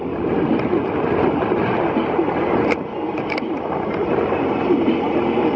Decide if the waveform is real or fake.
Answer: real